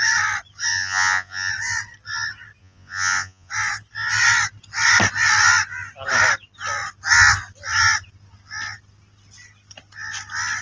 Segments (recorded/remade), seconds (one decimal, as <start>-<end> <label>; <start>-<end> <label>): 0.0-0.7 recorded; 0.7-1.5 remade; 1.5-2.6 recorded; 2.6-3.5 remade; 3.5-10.6 recorded